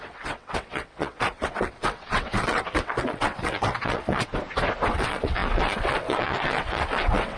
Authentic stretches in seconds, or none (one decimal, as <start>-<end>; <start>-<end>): 4.3-4.9